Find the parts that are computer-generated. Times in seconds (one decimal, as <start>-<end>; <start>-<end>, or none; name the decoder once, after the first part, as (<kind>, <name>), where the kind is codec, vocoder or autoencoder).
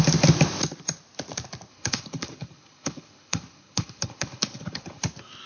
1.7-5.0 (codec, HILCodec)